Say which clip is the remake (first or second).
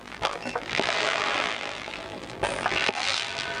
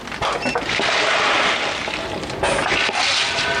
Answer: first